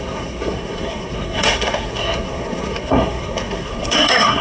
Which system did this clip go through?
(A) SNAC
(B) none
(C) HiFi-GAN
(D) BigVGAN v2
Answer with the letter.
A